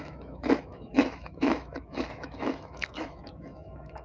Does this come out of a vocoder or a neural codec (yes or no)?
yes